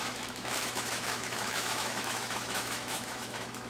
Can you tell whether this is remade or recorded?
remade